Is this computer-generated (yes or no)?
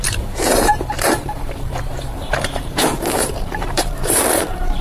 yes